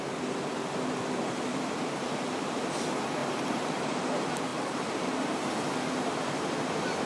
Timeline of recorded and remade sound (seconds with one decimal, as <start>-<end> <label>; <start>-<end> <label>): 0.0-1.5 recorded; 1.5-2.5 remade; 2.5-3.2 recorded; 3.2-3.7 remade; 3.7-4.5 recorded; 4.5-5.3 remade; 5.3-7.1 recorded